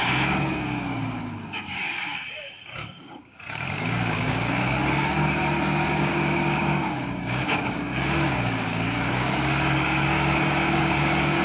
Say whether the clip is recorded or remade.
remade